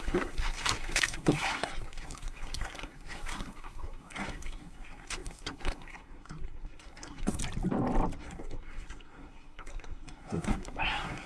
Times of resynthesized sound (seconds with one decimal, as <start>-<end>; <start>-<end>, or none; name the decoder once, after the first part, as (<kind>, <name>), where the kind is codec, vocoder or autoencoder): 0.0-7.4 (codec, SNAC); 8.2-11.3